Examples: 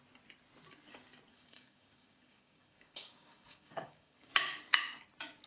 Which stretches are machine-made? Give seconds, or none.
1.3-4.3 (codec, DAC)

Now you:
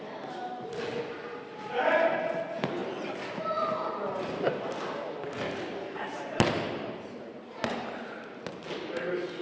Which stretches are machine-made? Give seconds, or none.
none

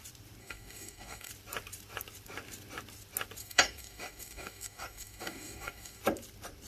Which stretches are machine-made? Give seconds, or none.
0.4-1.3 (codec, DAC); 3.4-6.0

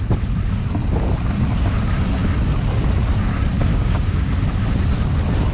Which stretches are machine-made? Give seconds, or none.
3.7-4.3 (codec, DAC)

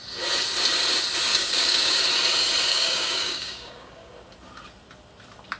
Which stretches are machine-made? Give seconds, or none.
1.3-2.0 (codec, DAC); 2.7-4.1